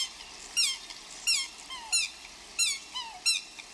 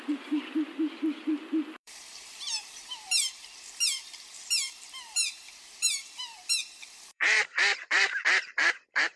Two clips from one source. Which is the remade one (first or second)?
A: second